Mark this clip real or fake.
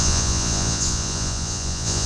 fake